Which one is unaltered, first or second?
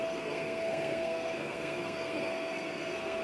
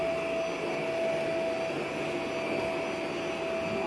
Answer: second